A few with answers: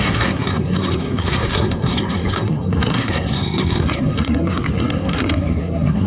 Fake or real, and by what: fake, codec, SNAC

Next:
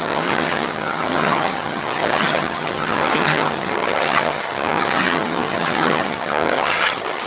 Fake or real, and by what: fake, vocoder, HiFi-GAN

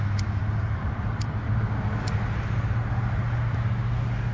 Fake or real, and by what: real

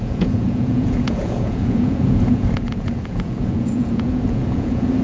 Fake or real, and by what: fake, vocoder, Vocos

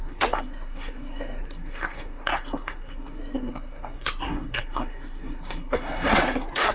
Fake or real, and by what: fake, codec, SNAC